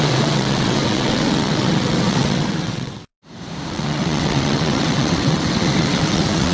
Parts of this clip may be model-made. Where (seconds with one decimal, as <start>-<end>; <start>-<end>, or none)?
0.0-3.1; 3.7-6.5